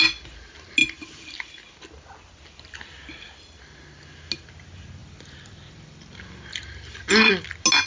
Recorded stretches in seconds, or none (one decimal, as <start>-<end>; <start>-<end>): 0.0-0.8; 1.7-5.0; 7.3-7.9